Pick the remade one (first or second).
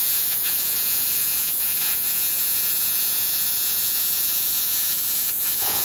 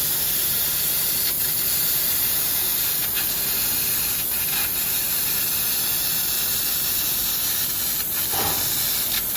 first